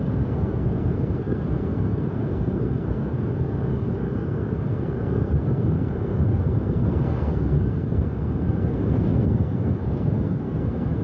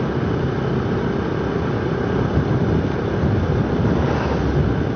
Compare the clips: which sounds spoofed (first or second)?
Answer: first